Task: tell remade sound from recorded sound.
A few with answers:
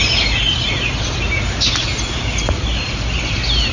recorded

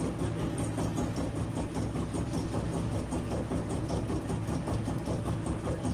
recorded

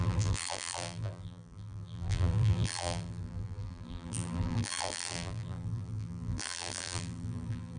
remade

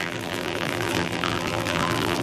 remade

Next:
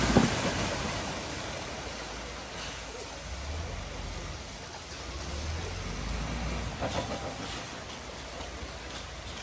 recorded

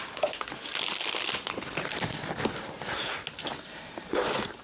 recorded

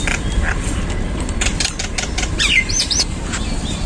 recorded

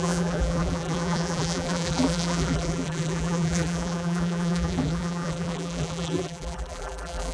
remade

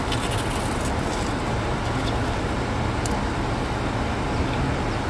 recorded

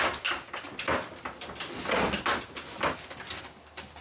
recorded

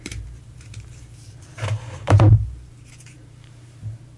remade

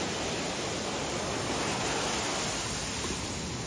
recorded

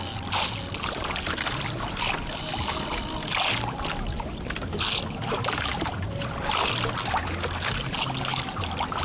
recorded